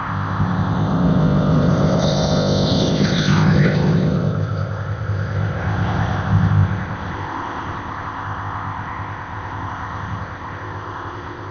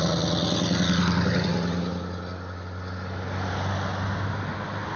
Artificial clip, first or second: first